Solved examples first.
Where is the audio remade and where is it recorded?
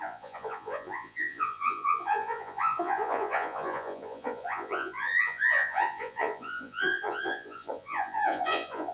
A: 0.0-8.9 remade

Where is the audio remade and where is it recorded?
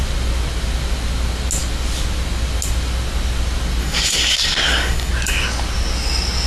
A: 0.0-3.8 recorded; 3.8-5.1 remade; 5.1-6.5 recorded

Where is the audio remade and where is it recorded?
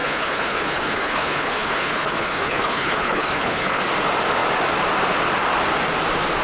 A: 0.0-3.8 remade; 3.8-6.4 recorded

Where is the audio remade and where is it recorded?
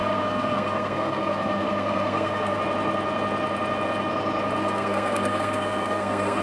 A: 0.0-2.6 remade; 2.6-4.6 recorded; 4.6-6.4 remade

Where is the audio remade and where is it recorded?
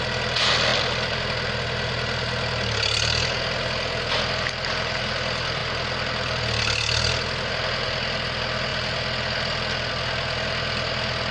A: 0.0-0.7 recorded; 0.7-1.2 remade; 1.2-11.3 recorded